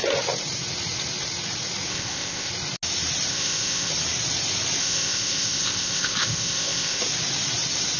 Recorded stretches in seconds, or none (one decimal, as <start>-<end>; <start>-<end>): 0.0-1.9; 2.5-3.3; 3.9-4.8; 7.0-8.0